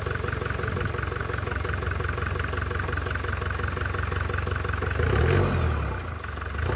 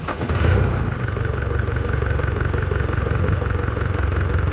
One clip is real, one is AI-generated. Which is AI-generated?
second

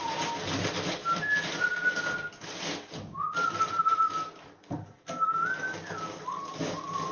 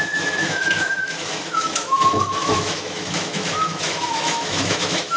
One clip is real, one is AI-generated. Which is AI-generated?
second